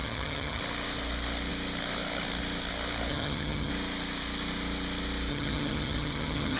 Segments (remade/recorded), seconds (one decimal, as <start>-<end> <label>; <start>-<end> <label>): 0.0-0.6 remade; 0.6-3.1 recorded; 3.1-3.7 remade; 3.7-5.3 recorded; 5.3-6.6 remade